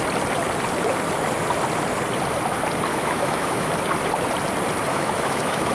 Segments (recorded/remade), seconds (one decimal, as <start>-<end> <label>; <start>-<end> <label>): 0.0-2.9 recorded; 2.9-3.7 remade; 3.7-4.9 recorded; 4.9-5.7 remade